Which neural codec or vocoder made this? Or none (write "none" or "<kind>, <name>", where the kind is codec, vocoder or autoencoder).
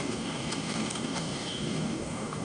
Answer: codec, DAC